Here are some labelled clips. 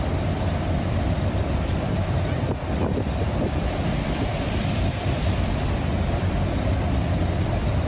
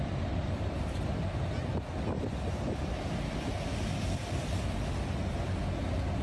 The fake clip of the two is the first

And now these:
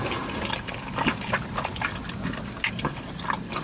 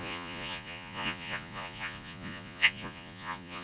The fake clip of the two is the second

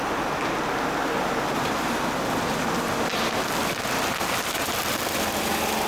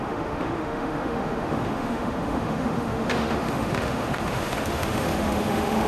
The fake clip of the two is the second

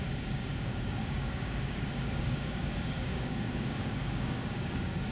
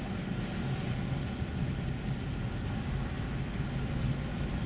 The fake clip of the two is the first